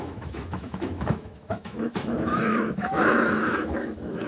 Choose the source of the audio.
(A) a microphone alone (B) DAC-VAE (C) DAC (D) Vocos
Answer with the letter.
B